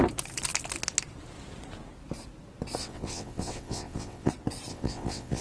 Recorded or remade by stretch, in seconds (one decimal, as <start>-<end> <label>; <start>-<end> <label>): 0.0-2.8 recorded; 2.8-4.3 remade; 4.3-4.7 recorded; 4.7-5.4 remade